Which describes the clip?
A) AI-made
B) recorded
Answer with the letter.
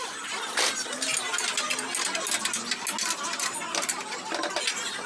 B